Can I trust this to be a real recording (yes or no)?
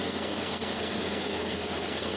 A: no